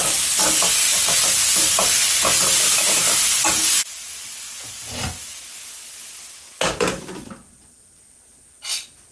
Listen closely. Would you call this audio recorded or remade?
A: recorded